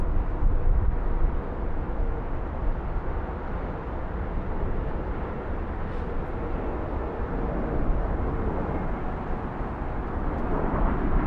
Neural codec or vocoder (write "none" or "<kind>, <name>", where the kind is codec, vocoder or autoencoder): none